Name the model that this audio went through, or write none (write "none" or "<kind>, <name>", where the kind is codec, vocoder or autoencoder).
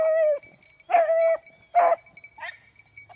none